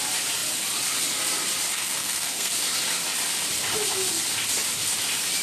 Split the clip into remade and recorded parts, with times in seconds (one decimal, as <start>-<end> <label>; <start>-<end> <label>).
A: 0.0-1.7 recorded; 1.7-2.5 remade; 2.5-5.4 recorded